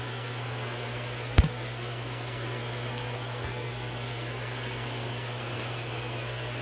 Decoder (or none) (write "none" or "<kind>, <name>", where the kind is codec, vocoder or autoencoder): codec, SNAC